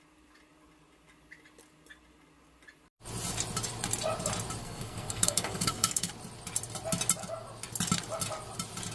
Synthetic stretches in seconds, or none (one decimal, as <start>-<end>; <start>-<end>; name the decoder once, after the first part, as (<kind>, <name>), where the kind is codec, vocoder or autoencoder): 4.6-6.1 (codec, SNAC)